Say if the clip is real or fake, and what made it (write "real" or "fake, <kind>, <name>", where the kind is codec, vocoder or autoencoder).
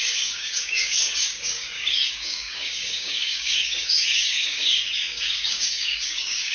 fake, codec, DAC